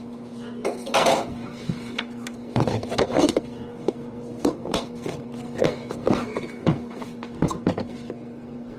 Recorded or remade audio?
remade